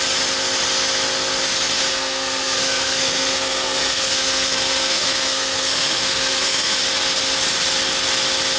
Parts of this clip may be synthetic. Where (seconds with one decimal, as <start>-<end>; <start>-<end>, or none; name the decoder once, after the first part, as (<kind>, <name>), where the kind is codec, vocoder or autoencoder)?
1.8-6.8 (codec, SNAC)